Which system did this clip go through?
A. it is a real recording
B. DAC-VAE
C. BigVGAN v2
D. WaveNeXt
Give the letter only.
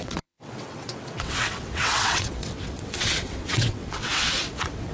D